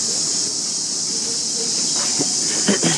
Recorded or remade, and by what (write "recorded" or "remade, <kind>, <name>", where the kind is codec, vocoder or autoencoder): recorded